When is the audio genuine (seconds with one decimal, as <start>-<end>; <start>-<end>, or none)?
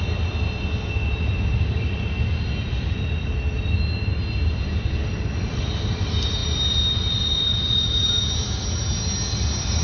0.0-9.8